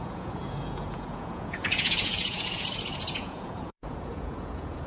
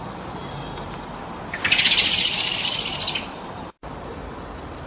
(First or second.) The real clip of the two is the second